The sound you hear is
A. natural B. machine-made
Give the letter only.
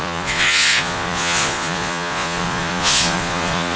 B